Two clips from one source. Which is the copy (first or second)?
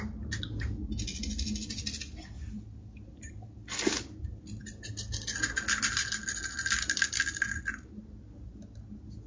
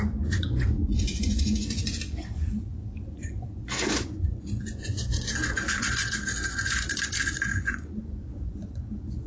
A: second